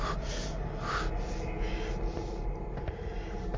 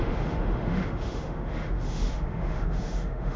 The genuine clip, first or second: first